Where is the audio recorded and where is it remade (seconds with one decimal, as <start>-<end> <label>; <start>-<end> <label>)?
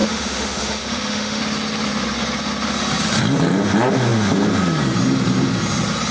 0.0-1.4 remade; 1.4-6.1 recorded